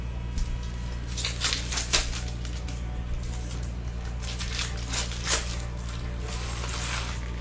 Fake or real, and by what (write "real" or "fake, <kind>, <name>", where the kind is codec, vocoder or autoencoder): real